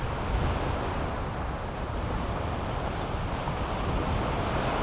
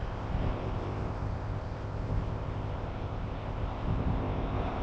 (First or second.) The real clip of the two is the first